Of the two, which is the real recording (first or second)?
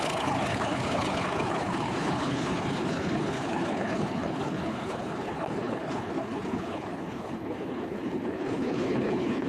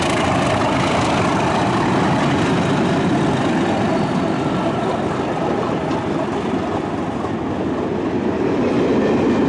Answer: second